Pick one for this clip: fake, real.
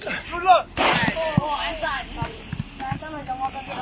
real